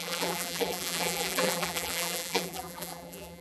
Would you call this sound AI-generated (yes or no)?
yes